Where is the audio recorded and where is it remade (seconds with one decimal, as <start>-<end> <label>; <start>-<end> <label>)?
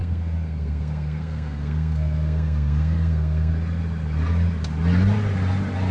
0.0-3.5 remade; 3.5-5.9 recorded